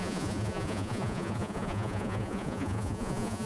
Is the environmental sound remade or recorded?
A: remade